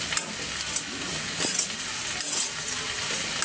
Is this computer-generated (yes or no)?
no